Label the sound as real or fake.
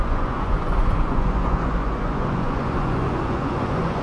fake